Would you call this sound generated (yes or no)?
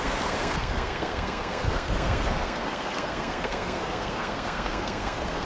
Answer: yes